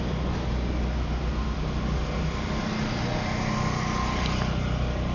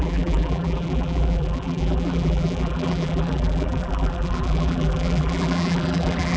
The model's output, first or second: second